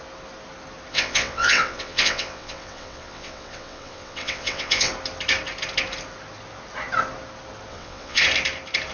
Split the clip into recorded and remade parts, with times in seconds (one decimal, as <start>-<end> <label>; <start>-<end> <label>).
0.0-0.9 recorded; 0.9-4.9 remade; 4.9-7.7 recorded; 7.7-8.2 remade; 8.2-8.9 recorded